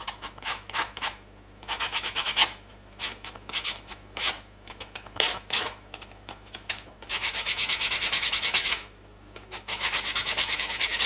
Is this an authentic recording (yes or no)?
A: no